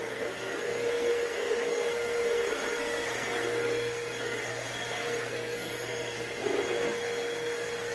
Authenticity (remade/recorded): remade